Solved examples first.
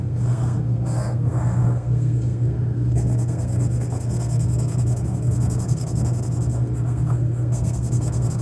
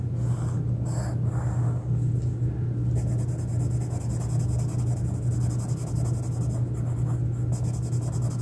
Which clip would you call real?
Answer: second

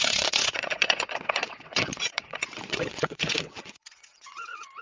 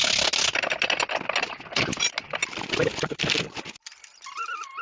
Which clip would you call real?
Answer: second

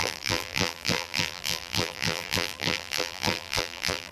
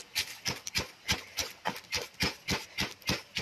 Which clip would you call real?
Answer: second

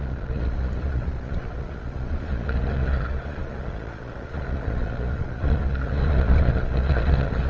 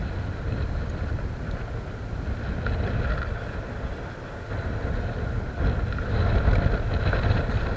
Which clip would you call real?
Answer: second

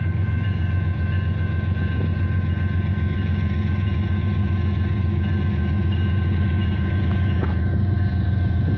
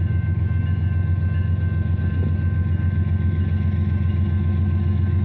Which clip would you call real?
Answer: second